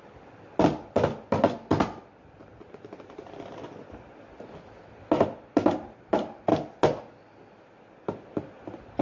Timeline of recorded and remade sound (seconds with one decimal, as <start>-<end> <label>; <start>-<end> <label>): 0.0-9.0 recorded